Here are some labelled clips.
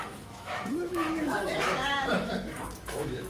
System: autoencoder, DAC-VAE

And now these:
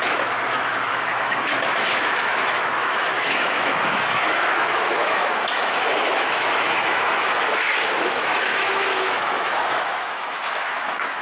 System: autoencoder, DAC-VAE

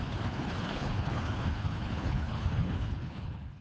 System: codec, HILCodec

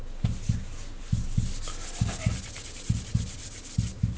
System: none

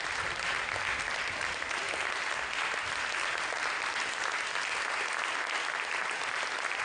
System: none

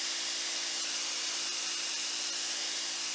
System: none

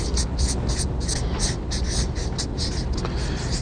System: none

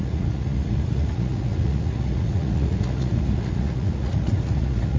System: vocoder, Vocos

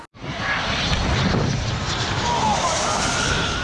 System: none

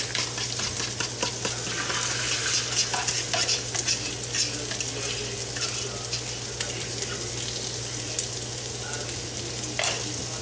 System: none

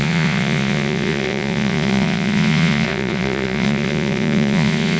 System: vocoder, Vocos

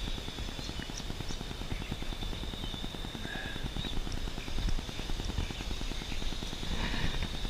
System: none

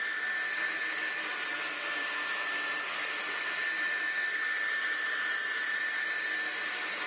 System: vocoder, BigVGAN v2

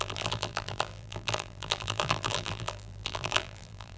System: vocoder, BigVGAN v2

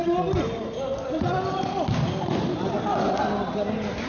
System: none